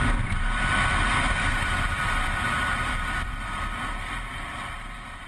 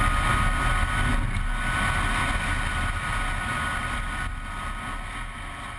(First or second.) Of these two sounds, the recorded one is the second